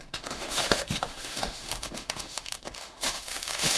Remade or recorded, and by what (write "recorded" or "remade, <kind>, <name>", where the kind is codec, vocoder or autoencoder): remade, autoencoder, DAC-VAE